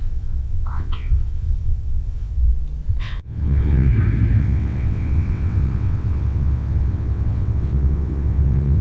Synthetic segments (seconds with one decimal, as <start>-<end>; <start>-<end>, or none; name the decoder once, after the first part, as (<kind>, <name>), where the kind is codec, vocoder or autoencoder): 0.0-2.4 (vocoder, WaveNeXt); 3.0-3.9; 4.4-8.8

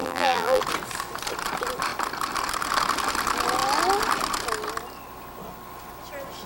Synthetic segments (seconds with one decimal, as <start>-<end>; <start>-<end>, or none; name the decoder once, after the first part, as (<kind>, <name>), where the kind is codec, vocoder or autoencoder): 0.0-0.6 (vocoder, BigVGAN v2)